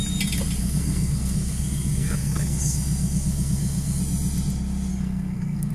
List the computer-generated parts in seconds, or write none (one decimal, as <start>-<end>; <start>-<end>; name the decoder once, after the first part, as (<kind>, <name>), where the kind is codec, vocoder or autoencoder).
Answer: 0.6-4.0 (codec, SNAC); 4.9-5.7